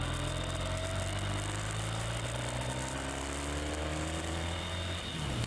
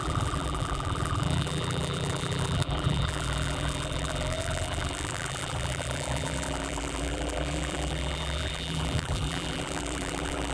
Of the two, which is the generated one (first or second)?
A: second